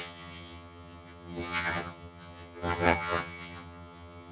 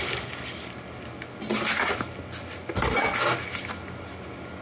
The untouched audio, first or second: second